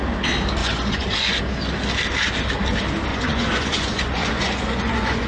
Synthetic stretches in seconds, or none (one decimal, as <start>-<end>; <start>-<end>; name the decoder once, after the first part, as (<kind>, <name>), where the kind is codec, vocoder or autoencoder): 0.6-1.4 (vocoder, Vocos); 3.1-5.3